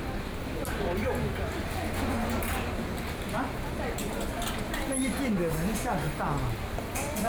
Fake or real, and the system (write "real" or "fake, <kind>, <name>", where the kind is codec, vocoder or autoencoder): real